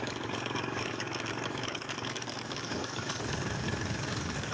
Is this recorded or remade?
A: remade